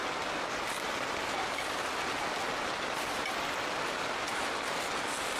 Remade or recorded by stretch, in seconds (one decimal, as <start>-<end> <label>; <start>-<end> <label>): 0.0-5.4 recorded